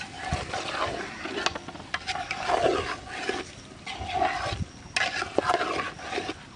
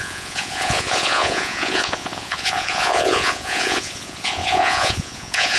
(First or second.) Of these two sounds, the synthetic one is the second